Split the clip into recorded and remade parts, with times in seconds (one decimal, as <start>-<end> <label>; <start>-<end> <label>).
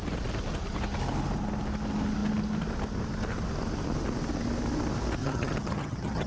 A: 0.0-5.2 recorded; 5.2-6.3 remade